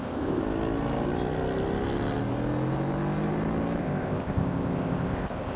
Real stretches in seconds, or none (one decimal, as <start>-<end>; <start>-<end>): 0.4-3.8